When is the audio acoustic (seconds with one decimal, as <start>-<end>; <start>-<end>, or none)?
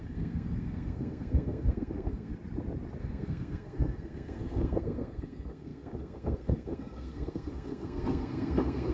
2.3-3.0